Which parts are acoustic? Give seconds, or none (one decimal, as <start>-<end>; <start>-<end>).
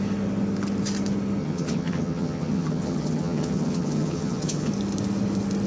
0.0-1.4; 4.7-5.7